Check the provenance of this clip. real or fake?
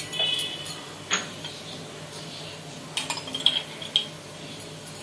real